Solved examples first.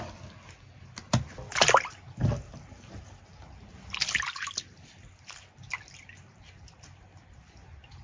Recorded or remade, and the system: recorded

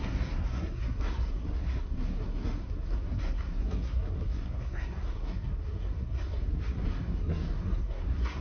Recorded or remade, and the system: remade, codec, SNAC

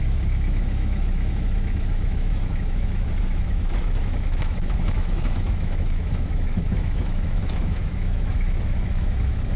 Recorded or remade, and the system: remade, autoencoder, DAC-VAE